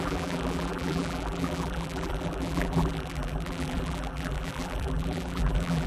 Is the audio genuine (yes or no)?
no